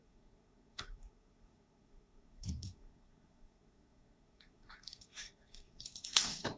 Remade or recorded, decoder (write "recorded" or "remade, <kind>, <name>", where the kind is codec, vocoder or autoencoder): remade, codec, SNAC